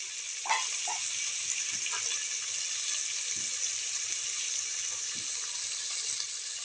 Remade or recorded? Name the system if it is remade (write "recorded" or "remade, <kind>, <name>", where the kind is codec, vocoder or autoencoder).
recorded